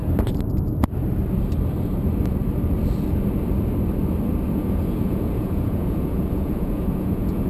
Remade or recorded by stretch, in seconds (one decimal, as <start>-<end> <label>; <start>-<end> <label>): 0.0-4.5 recorded; 4.5-7.5 remade